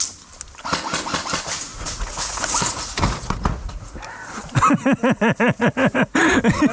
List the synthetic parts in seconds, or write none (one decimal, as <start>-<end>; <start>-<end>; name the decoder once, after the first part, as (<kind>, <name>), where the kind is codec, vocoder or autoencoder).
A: 1.7-3.9 (vocoder, Vocos); 5.6-6.3